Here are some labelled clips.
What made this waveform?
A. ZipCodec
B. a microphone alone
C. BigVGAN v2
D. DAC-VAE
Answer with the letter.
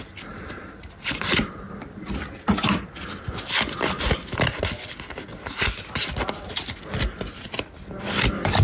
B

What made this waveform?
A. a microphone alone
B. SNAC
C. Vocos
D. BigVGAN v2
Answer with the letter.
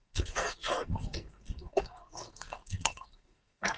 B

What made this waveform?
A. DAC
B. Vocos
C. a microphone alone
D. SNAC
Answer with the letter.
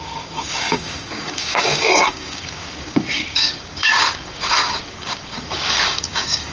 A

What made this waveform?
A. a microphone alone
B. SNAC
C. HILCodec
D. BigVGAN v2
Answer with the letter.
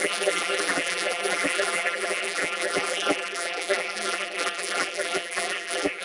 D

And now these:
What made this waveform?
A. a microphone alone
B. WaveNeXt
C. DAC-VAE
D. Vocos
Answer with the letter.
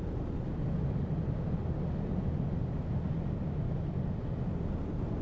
A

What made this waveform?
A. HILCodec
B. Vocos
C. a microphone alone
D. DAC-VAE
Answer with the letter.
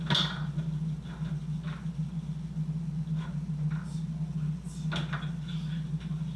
C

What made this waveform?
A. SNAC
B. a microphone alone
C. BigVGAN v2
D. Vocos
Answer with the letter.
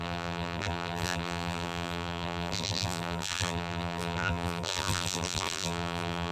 C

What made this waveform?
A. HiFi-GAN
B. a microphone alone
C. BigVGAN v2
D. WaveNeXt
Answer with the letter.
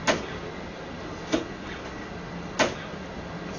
B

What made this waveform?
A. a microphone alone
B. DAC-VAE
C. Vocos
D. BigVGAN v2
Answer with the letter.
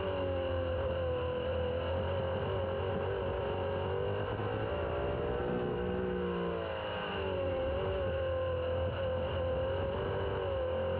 A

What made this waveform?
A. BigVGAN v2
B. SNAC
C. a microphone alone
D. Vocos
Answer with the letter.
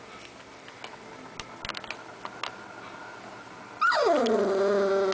C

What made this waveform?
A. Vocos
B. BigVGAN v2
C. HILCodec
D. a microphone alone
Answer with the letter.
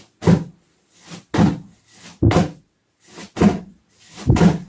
D